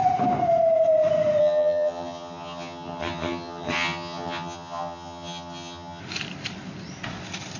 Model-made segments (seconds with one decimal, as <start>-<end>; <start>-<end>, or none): 1.4-6.0